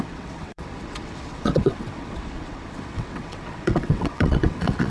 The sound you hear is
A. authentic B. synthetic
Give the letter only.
B